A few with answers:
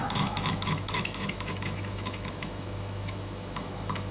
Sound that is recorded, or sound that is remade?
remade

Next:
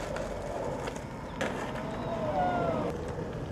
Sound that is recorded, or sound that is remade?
recorded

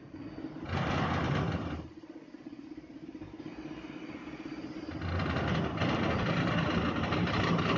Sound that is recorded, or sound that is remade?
recorded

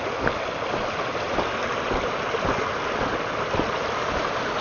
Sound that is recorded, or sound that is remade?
recorded